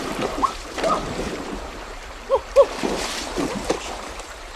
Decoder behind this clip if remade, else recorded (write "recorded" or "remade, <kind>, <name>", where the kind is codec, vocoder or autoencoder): remade, vocoder, BigVGAN v2